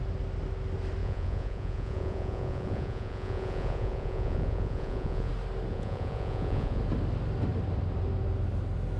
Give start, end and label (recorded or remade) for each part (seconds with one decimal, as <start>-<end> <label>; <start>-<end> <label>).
0.0-1.0 recorded; 1.0-5.3 remade; 5.3-5.7 recorded; 5.7-6.8 remade; 6.8-9.0 recorded